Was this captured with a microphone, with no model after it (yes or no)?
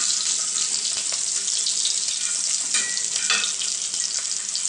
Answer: yes